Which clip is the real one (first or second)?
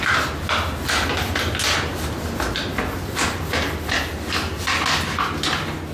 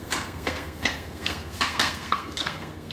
first